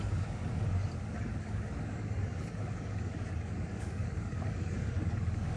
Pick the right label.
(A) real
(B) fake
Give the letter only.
B